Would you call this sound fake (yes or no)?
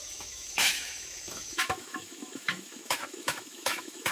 yes